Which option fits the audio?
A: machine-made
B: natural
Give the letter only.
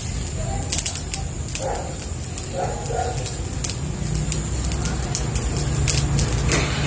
B